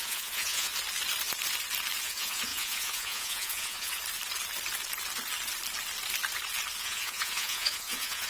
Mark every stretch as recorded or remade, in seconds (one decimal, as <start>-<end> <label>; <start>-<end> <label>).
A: 0.0-0.7 remade; 0.7-2.0 recorded; 2.0-4.0 remade; 4.0-6.8 recorded; 6.8-8.3 remade